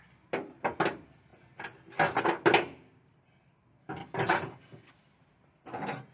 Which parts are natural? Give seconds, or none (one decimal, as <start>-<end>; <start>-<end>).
0.0-4.0; 4.9-6.1